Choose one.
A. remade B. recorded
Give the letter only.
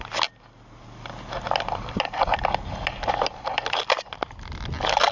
B